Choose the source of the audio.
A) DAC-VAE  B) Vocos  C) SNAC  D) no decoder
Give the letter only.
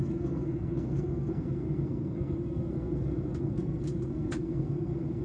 C